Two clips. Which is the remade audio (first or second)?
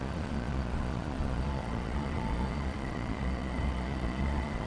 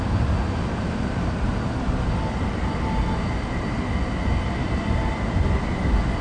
first